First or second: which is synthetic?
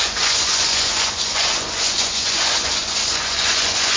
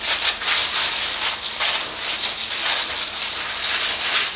first